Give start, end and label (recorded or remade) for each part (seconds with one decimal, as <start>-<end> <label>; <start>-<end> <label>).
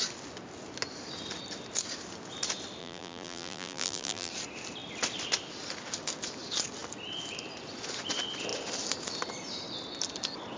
0.0-2.8 recorded; 2.8-4.3 remade; 4.3-10.6 recorded